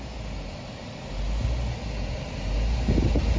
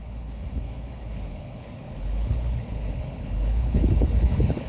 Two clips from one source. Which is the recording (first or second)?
first